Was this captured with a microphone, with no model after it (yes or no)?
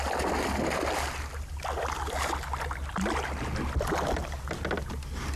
yes